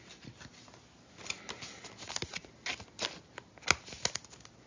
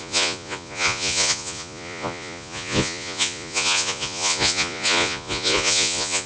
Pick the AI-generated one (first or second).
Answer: second